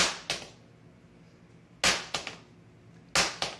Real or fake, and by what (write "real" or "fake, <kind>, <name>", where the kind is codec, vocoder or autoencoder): real